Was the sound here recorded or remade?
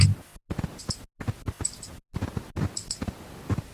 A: recorded